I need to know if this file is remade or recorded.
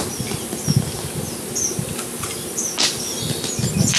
recorded